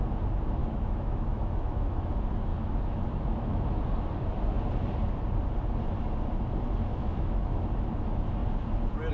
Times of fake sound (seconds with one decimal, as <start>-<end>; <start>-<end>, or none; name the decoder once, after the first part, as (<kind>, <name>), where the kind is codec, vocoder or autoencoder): 0.6-1.9 (autoencoder, DAC-VAE); 2.5-3.8; 6.9-7.6

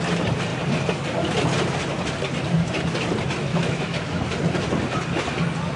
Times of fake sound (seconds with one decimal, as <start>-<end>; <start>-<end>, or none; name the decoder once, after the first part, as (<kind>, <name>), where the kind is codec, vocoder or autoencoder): 3.5-4.2 (autoencoder, DAC-VAE)